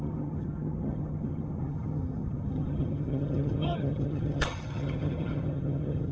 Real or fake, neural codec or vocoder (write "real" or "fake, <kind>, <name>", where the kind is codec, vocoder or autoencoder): fake, vocoder, HiFi-GAN